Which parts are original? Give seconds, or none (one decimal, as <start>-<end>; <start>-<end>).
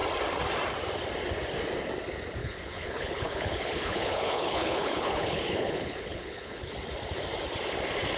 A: 0.0-2.4; 6.7-8.2